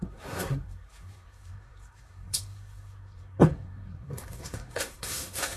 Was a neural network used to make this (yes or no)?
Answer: yes